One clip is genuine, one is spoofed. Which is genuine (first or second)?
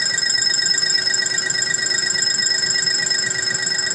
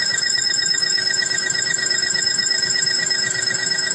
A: first